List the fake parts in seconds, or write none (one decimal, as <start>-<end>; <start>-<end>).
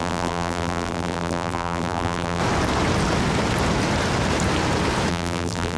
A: 0.0-2.4; 5.1-5.8